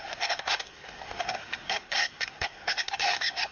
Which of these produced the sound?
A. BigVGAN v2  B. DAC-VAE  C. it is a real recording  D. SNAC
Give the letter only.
D